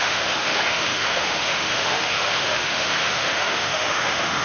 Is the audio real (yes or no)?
no